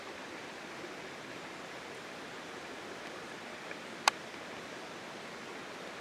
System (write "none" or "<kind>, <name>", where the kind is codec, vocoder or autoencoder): none